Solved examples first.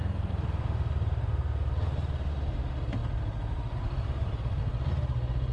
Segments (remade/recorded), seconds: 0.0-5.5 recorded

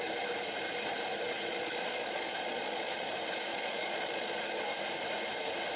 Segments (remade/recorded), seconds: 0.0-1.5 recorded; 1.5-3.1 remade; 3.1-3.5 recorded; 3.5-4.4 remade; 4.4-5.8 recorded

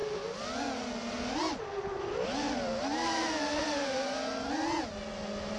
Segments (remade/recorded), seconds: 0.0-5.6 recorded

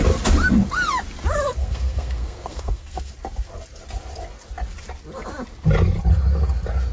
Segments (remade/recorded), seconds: 0.0-1.6 recorded; 1.6-3.1 remade; 3.1-6.9 recorded